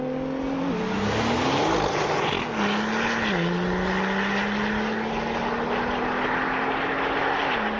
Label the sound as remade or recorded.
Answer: recorded